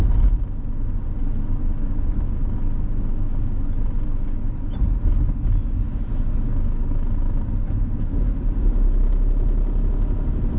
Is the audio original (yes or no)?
yes